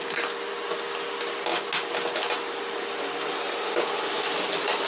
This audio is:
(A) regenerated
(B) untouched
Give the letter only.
B